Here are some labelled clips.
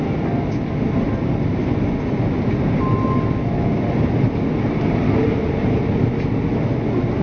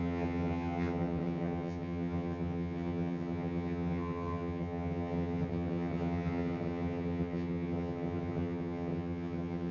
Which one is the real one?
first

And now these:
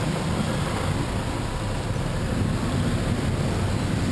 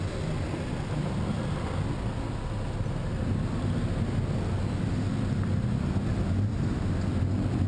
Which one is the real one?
second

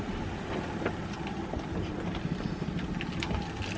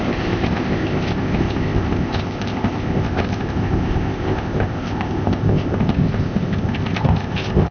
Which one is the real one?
first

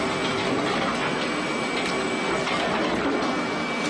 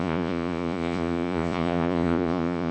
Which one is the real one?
first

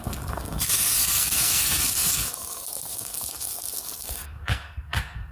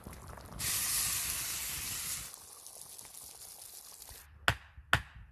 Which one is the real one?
second